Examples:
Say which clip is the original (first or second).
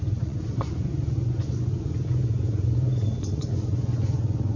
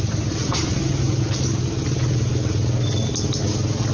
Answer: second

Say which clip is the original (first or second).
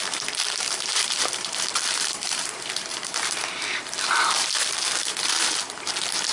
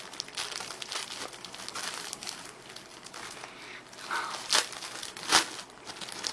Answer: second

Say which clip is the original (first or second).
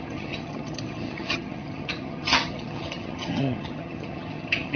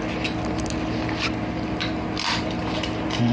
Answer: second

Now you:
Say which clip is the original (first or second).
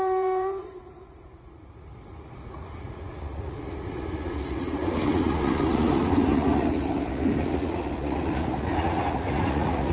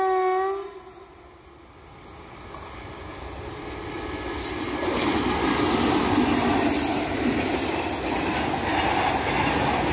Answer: second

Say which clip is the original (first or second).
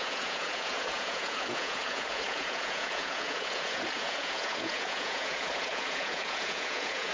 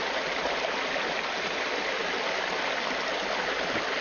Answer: second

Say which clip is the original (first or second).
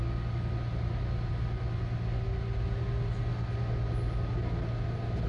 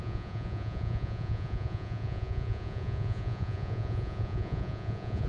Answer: first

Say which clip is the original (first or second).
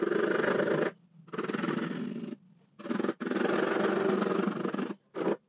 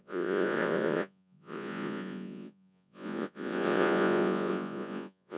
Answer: first